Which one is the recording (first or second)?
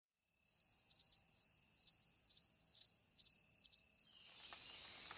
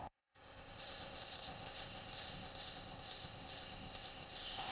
first